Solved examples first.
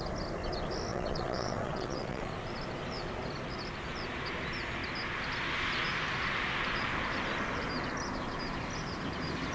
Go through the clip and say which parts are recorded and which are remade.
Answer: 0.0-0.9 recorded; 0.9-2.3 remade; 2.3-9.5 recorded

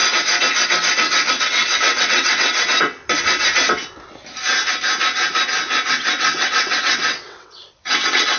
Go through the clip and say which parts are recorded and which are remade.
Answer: 0.0-1.4 recorded; 1.4-3.0 remade; 3.0-5.9 recorded; 5.9-8.4 remade

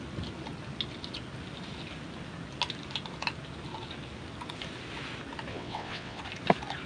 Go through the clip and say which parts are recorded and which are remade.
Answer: 0.0-5.5 recorded; 5.5-6.2 remade; 6.2-6.9 recorded

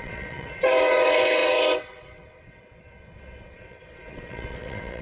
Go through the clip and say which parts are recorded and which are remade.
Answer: 0.0-5.0 remade

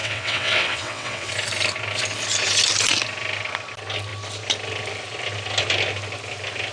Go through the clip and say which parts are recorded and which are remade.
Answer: 0.0-1.3 remade; 1.3-6.7 recorded